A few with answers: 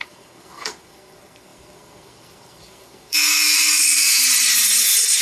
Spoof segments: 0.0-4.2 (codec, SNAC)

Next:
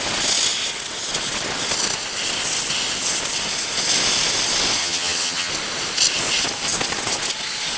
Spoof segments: 4.8-5.5 (vocoder, HiFi-GAN)

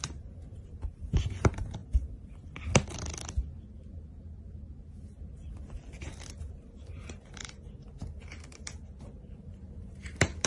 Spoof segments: 0.0-1.8 (vocoder, BigVGAN v2); 6.0-10.5

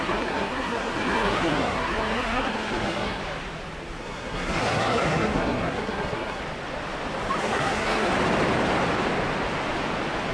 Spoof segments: 0.0-3.2 (codec, SNAC); 4.0-6.4; 7.4-8.1

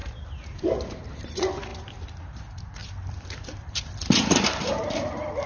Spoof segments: 0.0-1.7 (vocoder, BigVGAN v2); 2.2-5.5

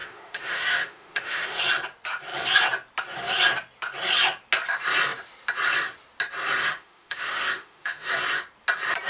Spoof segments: 0.0-1.6 (autoencoder, DAC-VAE); 6.6-8.1